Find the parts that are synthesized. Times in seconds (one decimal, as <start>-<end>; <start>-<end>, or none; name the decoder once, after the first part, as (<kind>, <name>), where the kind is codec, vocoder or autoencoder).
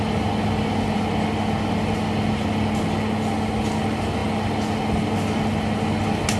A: none